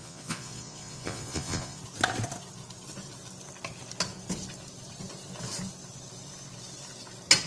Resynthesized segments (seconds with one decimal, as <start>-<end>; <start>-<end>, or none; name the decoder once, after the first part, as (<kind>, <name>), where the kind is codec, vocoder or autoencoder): 0.0-1.8 (vocoder, Vocos)